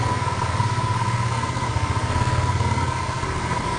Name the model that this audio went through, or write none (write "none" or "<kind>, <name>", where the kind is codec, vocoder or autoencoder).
codec, SNAC